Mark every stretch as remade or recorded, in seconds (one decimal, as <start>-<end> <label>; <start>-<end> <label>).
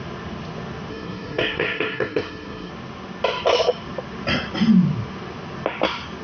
0.0-0.9 recorded; 0.9-2.7 remade; 2.7-6.2 recorded